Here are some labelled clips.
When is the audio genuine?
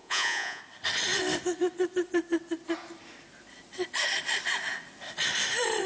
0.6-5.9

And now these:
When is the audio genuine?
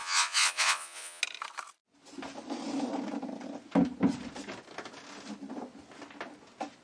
1.2-6.8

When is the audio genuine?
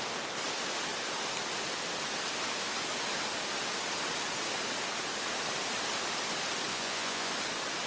0.0-6.7; 7.3-7.9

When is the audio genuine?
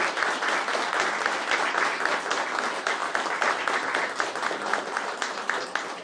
0.0-6.0